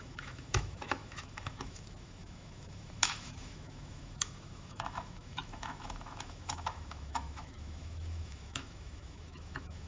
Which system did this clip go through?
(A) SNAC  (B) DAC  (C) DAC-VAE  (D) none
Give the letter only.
C